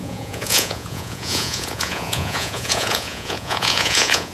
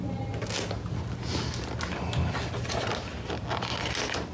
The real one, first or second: second